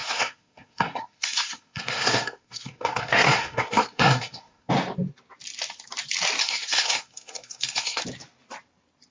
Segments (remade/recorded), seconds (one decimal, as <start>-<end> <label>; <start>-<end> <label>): 0.0-4.7 remade; 4.7-6.4 recorded; 6.4-8.0 remade; 8.0-9.1 recorded